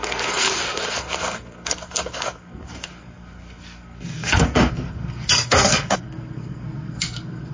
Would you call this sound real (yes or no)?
no